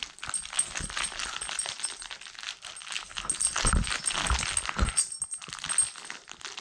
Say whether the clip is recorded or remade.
recorded